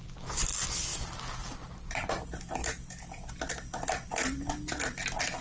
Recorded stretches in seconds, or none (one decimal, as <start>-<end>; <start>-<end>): 0.0-5.4